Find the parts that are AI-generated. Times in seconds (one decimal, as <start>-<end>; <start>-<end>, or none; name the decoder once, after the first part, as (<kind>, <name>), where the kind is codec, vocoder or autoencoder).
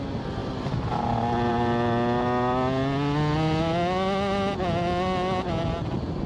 none